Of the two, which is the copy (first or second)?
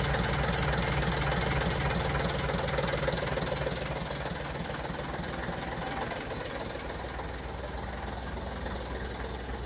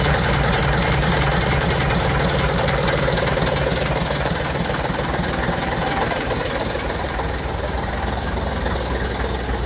second